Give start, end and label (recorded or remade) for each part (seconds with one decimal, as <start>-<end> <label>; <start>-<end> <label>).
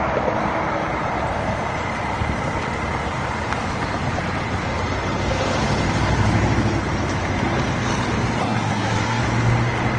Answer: 0.0-8.4 recorded; 8.4-9.2 remade; 9.2-10.0 recorded